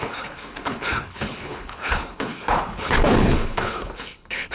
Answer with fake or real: fake